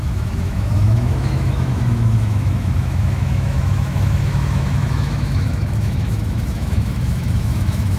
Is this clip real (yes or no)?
no